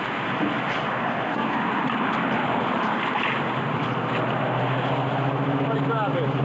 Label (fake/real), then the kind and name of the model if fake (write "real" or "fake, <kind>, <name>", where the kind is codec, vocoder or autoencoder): real